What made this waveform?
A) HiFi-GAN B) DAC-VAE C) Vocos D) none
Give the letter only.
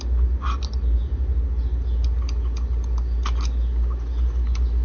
D